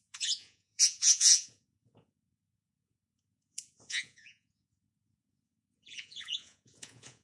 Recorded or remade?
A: remade